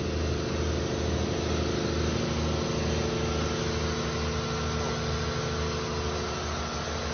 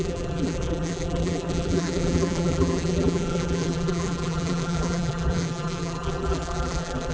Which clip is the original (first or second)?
first